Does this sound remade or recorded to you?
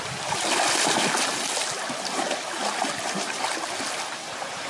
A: recorded